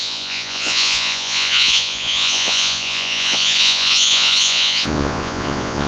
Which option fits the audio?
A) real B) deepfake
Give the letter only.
B